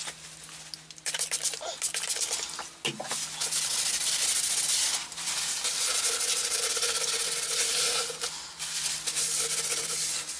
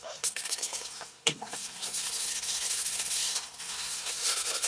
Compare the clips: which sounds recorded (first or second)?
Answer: first